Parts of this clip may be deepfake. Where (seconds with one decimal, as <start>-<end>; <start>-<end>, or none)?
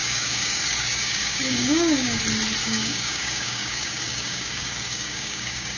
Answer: 0.0-2.2; 2.6-5.8